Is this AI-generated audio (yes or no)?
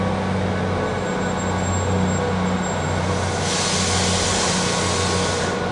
no